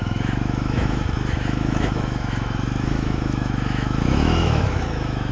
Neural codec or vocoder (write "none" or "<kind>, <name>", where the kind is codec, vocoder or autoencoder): autoencoder, DAC-VAE